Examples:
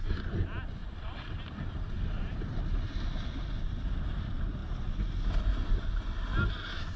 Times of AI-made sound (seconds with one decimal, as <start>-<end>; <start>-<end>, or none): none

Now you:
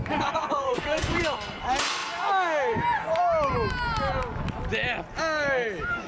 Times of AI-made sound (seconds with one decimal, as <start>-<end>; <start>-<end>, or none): 0.0-1.2

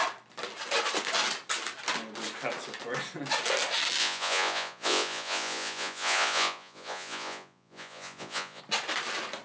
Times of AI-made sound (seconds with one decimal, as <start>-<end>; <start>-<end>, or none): 4.0-8.6